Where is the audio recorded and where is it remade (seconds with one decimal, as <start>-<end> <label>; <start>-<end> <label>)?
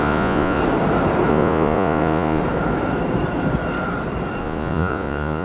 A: 0.0-0.6 remade; 0.6-1.3 recorded; 1.3-2.4 remade; 2.4-4.4 recorded; 4.4-5.4 remade